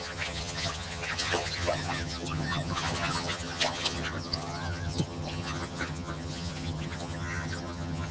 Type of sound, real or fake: fake